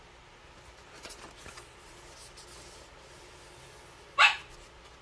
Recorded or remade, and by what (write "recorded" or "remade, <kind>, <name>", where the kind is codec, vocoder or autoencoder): recorded